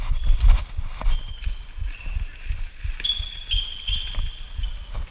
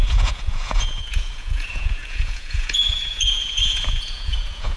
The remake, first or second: second